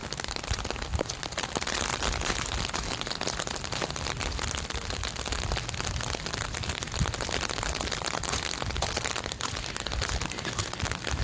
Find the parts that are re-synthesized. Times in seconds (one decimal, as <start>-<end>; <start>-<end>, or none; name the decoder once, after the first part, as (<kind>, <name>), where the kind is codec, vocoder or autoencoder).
none

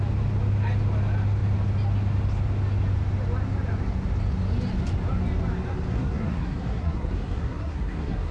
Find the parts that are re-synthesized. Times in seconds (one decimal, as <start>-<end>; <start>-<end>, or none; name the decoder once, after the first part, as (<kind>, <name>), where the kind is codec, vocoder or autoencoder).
5.9-8.3 (codec, SNAC)

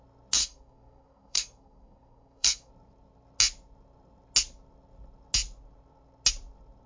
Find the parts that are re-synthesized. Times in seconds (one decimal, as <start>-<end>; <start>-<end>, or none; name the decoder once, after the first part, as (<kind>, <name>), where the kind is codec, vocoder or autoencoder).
0.4-2.7 (codec, SNAC)